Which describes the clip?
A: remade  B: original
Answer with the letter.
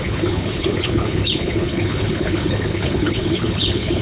A